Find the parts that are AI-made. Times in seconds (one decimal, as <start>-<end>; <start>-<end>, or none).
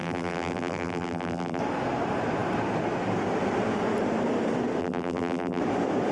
0.0-1.6; 4.8-5.6